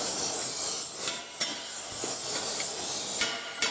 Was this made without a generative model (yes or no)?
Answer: yes